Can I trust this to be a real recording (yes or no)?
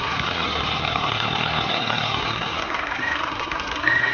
no